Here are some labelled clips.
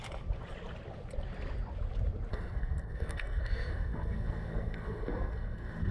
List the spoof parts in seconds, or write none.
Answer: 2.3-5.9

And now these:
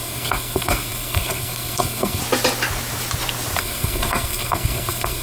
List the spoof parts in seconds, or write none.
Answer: 0.0-2.2; 3.6-5.2

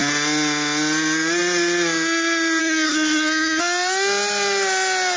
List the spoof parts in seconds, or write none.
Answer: 2.6-3.6

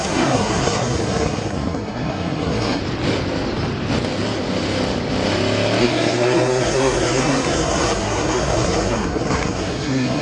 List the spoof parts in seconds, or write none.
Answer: 0.0-2.8; 5.8-10.2

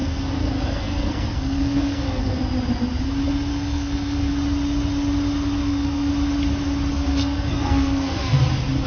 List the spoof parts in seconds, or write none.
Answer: 0.0-2.4; 3.5-4.3; 5.6-6.1; 6.9-8.4

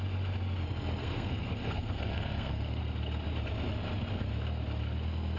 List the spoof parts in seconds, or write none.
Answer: 1.0-2.8

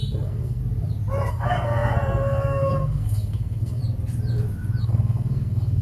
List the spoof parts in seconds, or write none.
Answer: 0.0-0.6; 1.3-3.8; 4.8-5.8